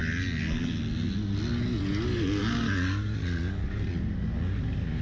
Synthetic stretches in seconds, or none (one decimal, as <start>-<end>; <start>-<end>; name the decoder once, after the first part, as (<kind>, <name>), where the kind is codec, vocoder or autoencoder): none